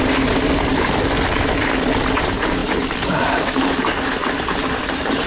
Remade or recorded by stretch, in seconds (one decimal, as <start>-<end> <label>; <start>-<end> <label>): 0.0-2.6 recorded; 2.6-3.6 remade; 3.6-4.2 recorded; 4.2-4.8 remade; 4.8-5.3 recorded